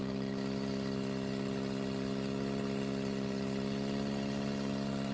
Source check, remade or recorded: recorded